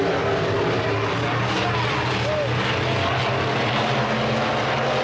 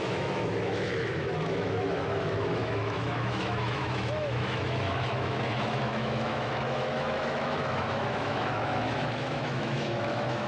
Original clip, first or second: first